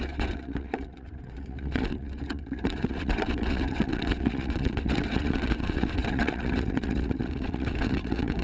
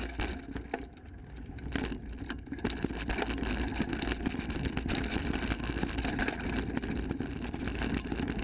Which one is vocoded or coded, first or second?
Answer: first